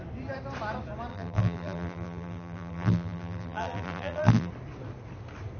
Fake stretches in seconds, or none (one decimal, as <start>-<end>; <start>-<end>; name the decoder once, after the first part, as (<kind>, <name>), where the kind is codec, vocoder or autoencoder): 1.1-4.5 (vocoder, BigVGAN v2)